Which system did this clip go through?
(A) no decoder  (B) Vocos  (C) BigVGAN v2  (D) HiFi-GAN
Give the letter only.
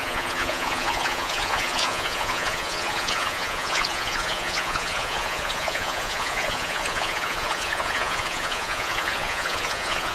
B